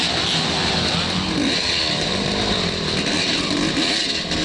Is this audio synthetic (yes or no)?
yes